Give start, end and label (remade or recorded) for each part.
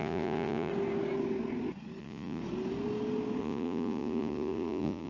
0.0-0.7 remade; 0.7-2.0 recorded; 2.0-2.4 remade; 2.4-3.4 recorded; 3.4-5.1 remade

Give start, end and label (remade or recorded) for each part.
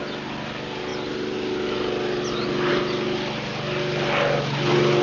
0.0-5.0 recorded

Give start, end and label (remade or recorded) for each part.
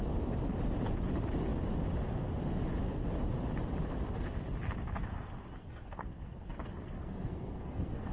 0.0-5.6 recorded; 5.6-8.1 remade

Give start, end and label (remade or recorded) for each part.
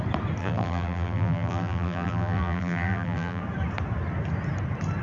0.0-0.4 recorded; 0.4-3.4 remade; 3.4-5.0 recorded